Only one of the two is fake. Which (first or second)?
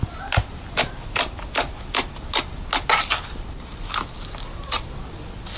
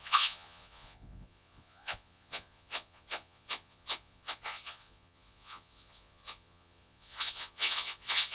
second